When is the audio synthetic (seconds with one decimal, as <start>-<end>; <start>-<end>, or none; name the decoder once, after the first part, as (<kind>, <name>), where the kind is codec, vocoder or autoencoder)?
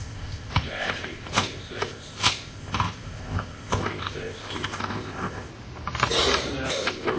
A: 0.0-5.5 (codec, ZipCodec); 6.7-7.2